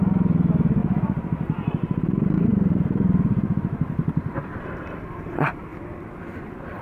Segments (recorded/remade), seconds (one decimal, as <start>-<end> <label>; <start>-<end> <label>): 0.0-0.8 remade; 0.8-1.7 recorded; 1.7-2.5 remade; 2.5-4.2 recorded; 4.2-5.7 remade; 5.7-6.8 recorded